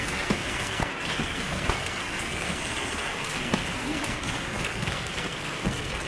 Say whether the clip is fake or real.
fake